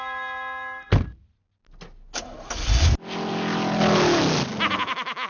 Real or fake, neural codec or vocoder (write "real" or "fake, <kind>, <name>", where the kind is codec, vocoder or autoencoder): real